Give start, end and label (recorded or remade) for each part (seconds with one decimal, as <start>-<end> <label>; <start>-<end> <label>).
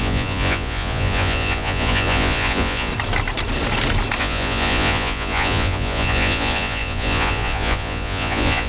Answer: 0.0-2.9 remade; 2.9-4.2 recorded; 4.2-8.7 remade